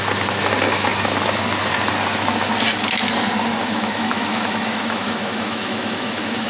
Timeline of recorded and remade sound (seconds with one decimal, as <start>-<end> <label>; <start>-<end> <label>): 0.0-3.5 recorded; 3.5-6.5 remade